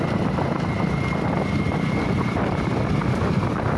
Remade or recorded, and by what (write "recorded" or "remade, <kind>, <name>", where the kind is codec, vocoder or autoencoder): recorded